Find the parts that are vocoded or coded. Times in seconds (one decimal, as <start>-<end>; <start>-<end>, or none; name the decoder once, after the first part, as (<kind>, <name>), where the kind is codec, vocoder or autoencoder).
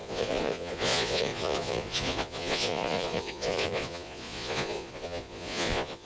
0.0-6.1 (vocoder, Vocos)